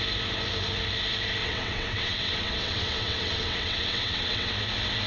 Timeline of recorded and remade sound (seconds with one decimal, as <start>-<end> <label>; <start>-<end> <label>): 0.0-1.4 recorded; 1.4-4.5 remade; 4.5-5.1 recorded

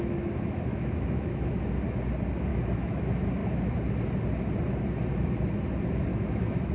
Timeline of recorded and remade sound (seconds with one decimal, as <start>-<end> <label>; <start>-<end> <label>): 0.0-0.7 recorded; 0.7-1.7 remade; 1.7-2.5 recorded; 2.5-3.0 remade; 3.0-6.1 recorded; 6.1-6.7 remade

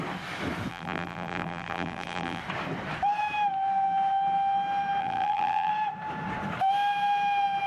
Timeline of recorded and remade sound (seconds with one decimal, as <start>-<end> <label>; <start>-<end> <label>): 0.0-0.7 recorded; 0.7-2.4 remade; 2.4-5.0 recorded; 5.0-5.7 remade; 5.7-7.7 recorded

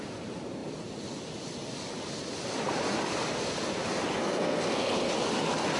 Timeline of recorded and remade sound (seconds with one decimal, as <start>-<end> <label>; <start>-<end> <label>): 0.0-4.2 recorded; 4.2-5.1 remade; 5.1-5.8 recorded

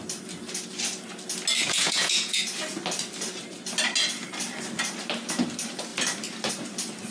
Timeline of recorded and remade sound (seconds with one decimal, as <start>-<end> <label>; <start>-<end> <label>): 0.0-1.6 recorded; 1.6-2.4 remade; 2.4-7.1 recorded